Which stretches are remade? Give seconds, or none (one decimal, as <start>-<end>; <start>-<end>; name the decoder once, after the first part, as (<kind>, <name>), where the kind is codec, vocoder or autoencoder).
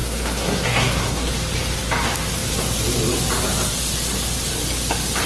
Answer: 0.0-1.3 (codec, SNAC)